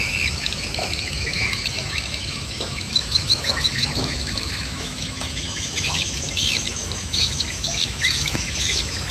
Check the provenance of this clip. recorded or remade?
remade